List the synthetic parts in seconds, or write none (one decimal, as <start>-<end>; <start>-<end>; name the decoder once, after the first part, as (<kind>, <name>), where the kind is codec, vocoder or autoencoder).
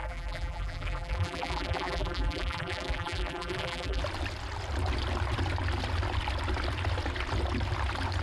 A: 0.0-4.0 (vocoder, BigVGAN v2)